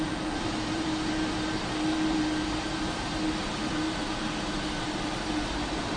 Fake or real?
fake